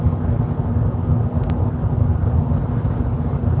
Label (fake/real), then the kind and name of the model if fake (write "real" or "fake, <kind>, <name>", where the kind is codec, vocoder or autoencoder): real